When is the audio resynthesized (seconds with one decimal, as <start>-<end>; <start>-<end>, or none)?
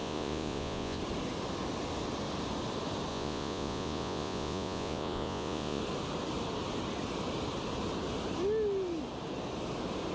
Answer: 0.0-1.0; 3.1-5.8